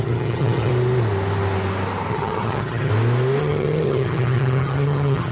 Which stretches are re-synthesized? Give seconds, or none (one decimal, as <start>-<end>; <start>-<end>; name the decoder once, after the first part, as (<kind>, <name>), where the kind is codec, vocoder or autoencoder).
0.0-0.7 (vocoder, HiFi-GAN); 2.1-2.9; 3.4-5.3